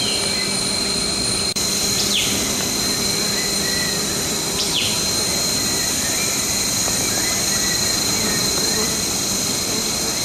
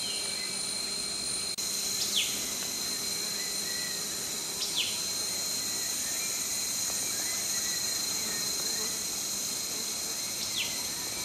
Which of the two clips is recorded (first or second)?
second